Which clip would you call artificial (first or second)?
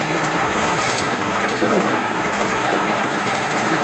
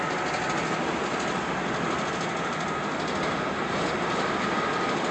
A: first